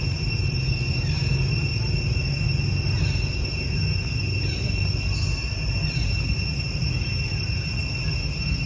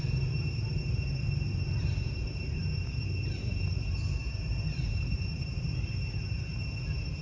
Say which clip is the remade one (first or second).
second